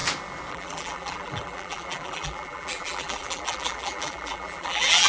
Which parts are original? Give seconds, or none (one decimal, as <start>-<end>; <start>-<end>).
0.0-0.5